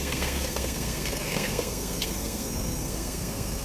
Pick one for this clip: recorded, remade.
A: remade